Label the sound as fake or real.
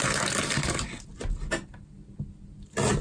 real